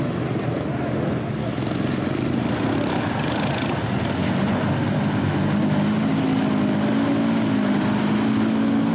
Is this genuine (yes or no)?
yes